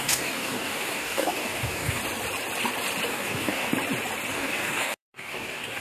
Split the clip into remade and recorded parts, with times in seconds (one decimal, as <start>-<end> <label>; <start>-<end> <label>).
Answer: 0.0-2.0 remade; 2.0-3.1 recorded; 3.1-3.7 remade; 3.7-4.3 recorded; 4.3-5.8 remade